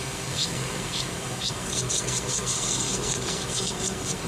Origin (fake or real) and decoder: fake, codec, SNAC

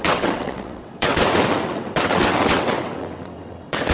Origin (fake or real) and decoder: fake, vocoder, WaveNeXt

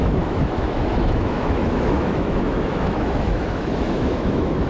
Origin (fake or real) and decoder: fake, autoencoder, DAC-VAE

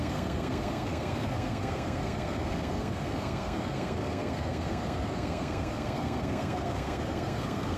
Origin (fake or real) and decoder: fake, codec, SNAC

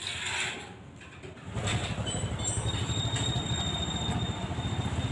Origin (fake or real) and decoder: real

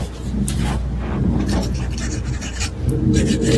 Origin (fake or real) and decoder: real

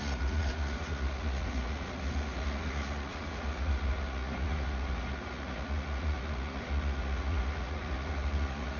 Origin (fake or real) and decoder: fake, vocoder, Vocos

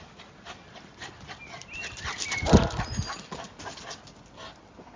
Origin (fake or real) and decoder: real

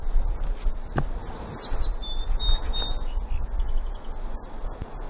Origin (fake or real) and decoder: real